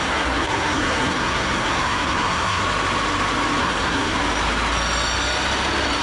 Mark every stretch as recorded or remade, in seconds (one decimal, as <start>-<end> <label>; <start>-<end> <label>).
0.0-2.6 remade; 2.6-3.6 recorded; 3.6-4.2 remade; 4.2-6.0 recorded